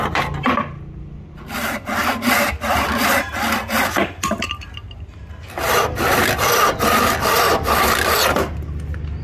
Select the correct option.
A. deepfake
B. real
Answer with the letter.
B